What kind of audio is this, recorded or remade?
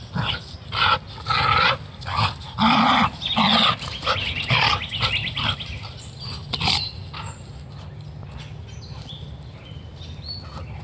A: recorded